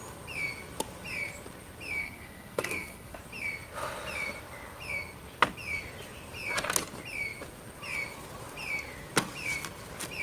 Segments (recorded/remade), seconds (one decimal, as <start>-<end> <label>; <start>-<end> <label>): 0.0-2.0 recorded; 2.0-3.2 remade; 3.2-10.2 recorded